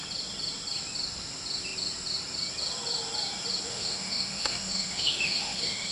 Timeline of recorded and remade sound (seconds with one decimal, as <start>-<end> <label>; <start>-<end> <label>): 0.0-3.7 recorded; 3.7-5.9 remade